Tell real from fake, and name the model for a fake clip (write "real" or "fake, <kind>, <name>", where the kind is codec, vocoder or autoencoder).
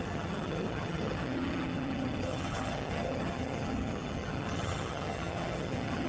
fake, vocoder, HiFi-GAN